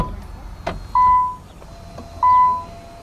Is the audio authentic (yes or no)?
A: yes